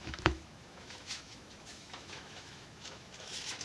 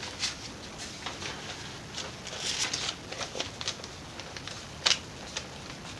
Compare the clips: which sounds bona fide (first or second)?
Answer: second